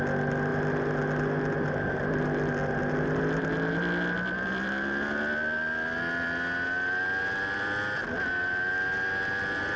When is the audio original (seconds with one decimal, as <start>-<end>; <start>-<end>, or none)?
0.0-9.8